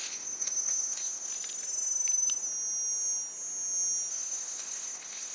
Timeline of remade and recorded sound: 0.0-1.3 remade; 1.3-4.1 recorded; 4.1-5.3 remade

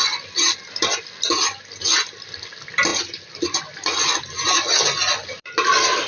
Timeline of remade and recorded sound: 0.0-6.1 recorded

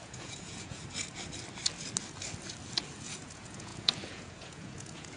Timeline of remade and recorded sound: 0.0-0.8 remade; 0.8-3.0 recorded; 3.0-5.2 remade

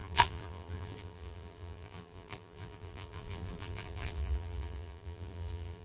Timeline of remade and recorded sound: 0.0-5.8 remade

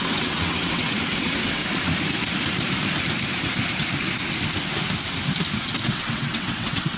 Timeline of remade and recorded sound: 0.0-1.6 remade; 1.6-5.8 recorded; 5.8-7.0 remade